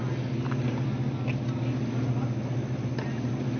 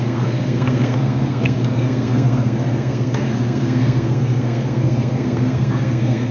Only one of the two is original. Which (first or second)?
first